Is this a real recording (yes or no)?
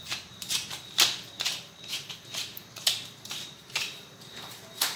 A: no